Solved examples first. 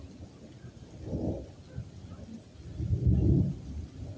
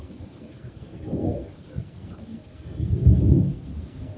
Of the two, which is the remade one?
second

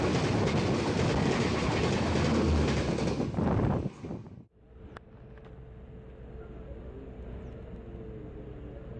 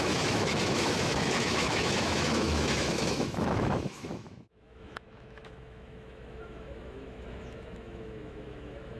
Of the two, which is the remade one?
second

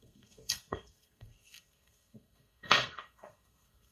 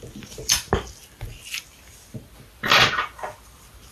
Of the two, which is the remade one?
first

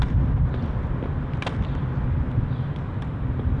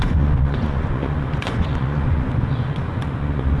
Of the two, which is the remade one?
second